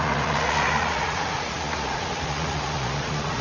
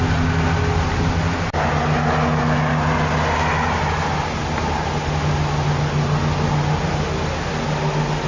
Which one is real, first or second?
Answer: second